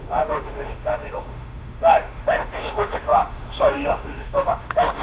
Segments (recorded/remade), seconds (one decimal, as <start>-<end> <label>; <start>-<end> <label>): 0.0-5.0 remade